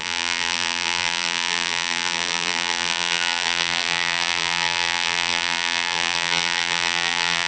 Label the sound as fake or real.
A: fake